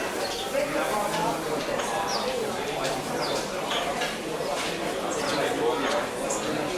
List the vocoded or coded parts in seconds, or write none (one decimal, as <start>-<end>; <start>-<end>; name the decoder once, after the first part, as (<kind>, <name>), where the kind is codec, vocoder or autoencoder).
1.2-4.7 (vocoder, BigVGAN v2)